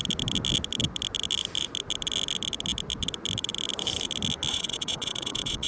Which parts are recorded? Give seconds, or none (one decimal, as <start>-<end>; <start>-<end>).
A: 0.0-4.5